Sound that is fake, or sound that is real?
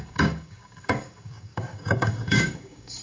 fake